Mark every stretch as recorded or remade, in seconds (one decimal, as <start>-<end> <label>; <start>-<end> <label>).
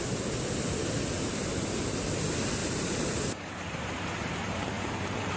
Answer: 0.0-2.6 recorded; 2.6-5.4 remade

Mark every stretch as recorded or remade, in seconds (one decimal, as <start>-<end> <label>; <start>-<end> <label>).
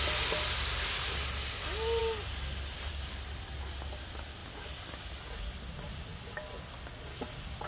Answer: 0.0-7.7 recorded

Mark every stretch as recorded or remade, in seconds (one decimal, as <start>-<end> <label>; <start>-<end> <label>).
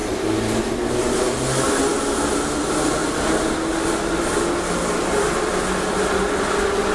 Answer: 0.0-6.9 recorded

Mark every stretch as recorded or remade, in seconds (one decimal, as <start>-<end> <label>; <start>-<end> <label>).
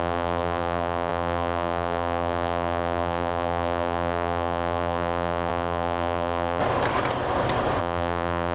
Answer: 0.0-6.6 remade; 6.6-7.8 recorded; 7.8-8.5 remade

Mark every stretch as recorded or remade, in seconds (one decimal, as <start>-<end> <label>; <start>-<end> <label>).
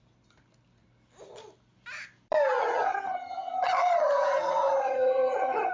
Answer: 0.0-2.6 recorded; 2.6-5.7 remade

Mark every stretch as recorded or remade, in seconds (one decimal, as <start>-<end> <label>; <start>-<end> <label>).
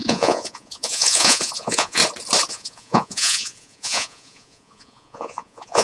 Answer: 0.0-2.0 remade; 2.0-2.5 recorded; 2.5-5.8 remade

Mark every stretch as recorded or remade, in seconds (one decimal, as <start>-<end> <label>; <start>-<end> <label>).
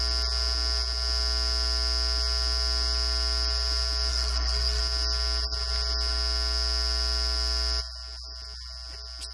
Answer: 0.0-4.1 recorded; 4.1-4.8 remade; 4.8-9.3 recorded